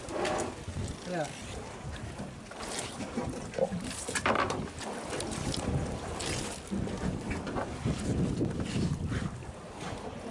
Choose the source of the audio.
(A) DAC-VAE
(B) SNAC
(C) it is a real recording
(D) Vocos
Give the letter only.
C